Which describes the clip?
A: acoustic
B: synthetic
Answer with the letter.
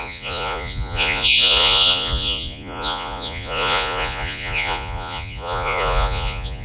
B